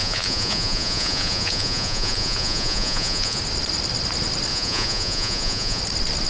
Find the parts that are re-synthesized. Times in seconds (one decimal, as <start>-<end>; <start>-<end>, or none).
0.0-3.4; 4.5-5.8

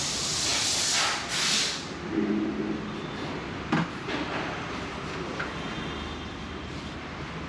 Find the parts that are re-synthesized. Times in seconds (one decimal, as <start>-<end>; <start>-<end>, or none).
none

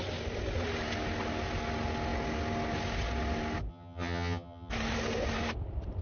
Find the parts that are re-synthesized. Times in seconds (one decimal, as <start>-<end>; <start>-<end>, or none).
3.7-4.7

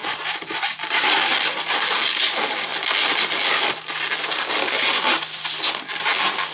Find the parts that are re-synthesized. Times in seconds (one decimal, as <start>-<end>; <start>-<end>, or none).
0.0-1.6

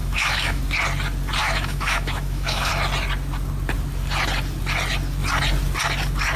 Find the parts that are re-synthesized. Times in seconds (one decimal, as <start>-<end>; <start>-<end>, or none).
0.0-0.6; 1.4-2.7

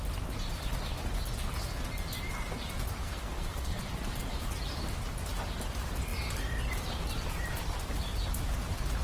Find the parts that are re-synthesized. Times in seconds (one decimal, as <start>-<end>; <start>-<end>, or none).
3.0-3.8